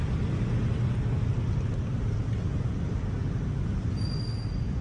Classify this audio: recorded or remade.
recorded